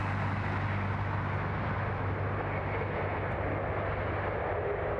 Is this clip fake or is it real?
real